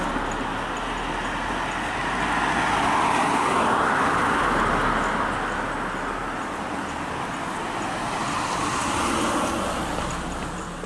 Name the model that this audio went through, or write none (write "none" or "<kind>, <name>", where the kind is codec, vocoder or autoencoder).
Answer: none